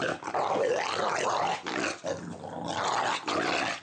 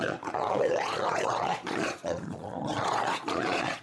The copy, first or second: second